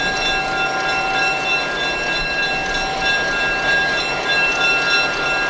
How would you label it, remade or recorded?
recorded